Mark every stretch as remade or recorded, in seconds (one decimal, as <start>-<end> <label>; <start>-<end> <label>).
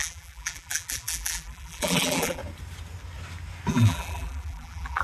0.0-2.4 remade; 2.4-3.7 recorded; 3.7-5.0 remade